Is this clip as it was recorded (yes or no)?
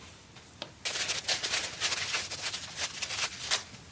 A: yes